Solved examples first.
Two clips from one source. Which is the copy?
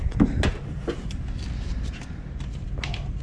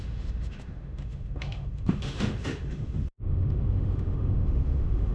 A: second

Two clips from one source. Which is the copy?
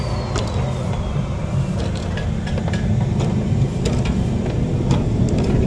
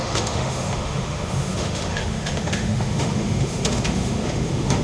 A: second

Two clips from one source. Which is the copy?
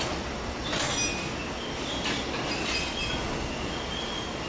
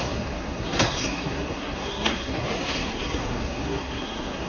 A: second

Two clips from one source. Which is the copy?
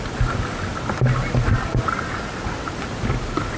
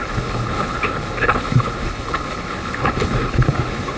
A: second